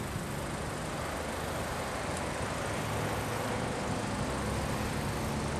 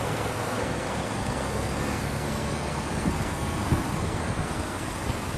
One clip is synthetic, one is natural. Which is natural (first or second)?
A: first